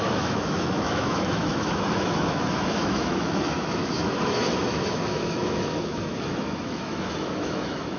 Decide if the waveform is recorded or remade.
remade